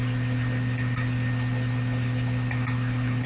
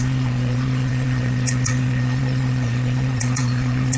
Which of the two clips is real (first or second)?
first